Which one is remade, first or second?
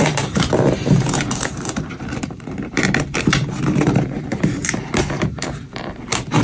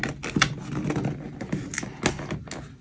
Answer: first